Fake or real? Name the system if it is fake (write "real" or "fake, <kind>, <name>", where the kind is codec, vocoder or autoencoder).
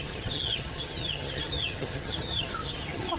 fake, vocoder, HiFi-GAN